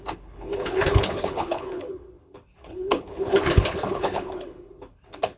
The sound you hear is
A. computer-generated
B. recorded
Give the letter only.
A